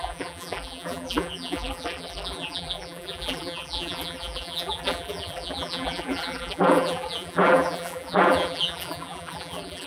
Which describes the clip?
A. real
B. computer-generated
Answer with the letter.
B